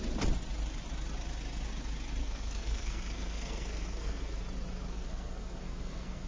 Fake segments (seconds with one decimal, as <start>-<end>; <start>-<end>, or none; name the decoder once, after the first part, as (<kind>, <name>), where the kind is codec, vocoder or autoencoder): 2.2-4.4 (codec, SNAC); 4.9-6.3